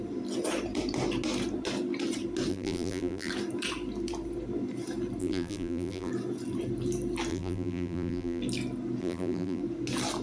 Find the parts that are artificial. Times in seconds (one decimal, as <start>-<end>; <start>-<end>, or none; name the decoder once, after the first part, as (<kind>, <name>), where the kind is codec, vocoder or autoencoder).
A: 2.5-3.3 (vocoder, BigVGAN v2); 5.2-6.1; 7.3-8.4; 9.0-9.6